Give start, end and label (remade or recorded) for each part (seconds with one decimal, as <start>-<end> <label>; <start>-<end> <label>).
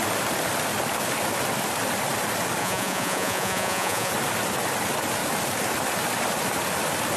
0.0-2.6 recorded; 2.6-4.1 remade; 4.1-7.2 recorded